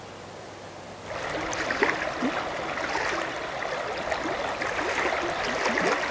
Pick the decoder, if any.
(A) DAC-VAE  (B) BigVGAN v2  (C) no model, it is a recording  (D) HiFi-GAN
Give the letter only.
C